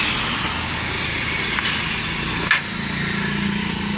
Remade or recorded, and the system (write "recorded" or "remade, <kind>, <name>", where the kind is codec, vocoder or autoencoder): recorded